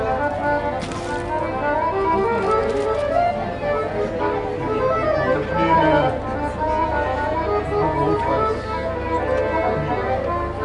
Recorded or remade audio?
recorded